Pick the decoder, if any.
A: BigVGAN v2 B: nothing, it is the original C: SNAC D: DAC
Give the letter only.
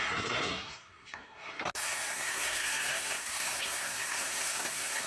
C